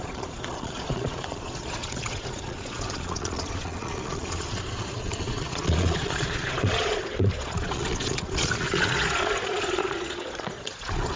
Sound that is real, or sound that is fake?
fake